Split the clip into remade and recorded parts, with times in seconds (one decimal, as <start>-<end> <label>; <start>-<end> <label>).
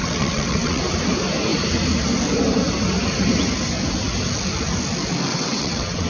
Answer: 0.0-0.8 remade; 0.8-5.3 recorded; 5.3-6.1 remade